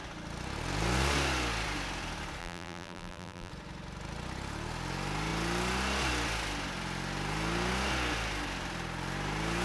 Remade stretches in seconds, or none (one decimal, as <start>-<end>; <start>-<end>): 2.4-3.5